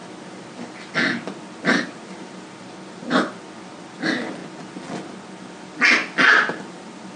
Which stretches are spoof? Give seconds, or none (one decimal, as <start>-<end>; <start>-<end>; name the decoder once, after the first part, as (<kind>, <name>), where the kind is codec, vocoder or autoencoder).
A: none